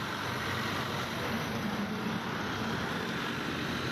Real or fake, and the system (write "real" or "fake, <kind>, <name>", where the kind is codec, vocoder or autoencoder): real